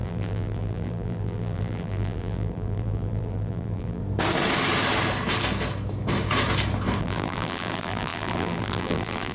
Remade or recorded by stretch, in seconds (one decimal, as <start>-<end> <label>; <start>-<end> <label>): 0.0-4.0 remade; 4.0-7.0 recorded; 7.0-9.3 remade